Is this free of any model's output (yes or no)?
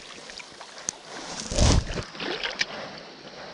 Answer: yes